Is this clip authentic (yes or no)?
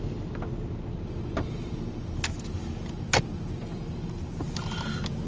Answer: yes